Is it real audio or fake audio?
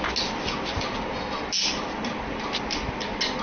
real